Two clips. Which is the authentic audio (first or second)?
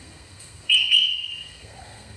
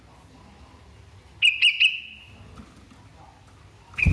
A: second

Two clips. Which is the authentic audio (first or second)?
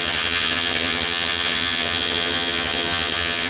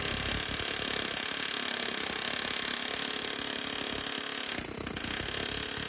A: second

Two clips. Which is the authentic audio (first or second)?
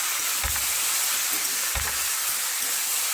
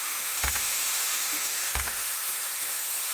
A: first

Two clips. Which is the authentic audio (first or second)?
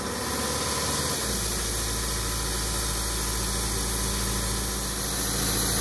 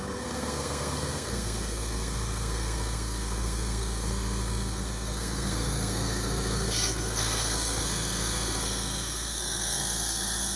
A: first